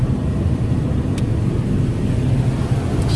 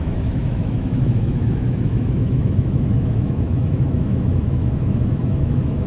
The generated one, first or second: second